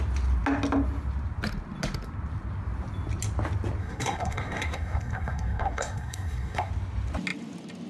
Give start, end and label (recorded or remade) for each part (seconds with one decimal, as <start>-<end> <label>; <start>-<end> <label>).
0.0-3.8 recorded; 3.8-6.7 remade; 6.7-7.9 recorded

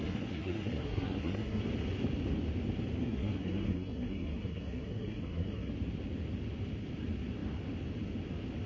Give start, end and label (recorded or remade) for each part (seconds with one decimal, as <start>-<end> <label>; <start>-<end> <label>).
0.0-1.6 remade; 1.6-3.0 recorded; 3.0-5.7 remade; 5.7-8.7 recorded